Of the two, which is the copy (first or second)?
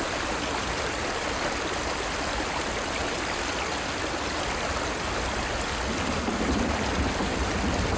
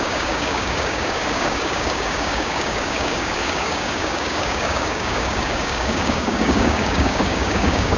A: second